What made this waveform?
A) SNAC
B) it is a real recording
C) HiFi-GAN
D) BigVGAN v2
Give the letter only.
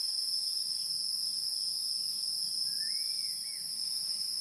B